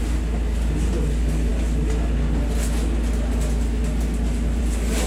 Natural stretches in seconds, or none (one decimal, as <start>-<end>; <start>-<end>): 0.0-5.1